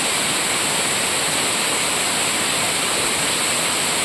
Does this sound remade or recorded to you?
recorded